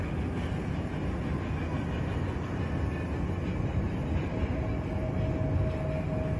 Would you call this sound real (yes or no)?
yes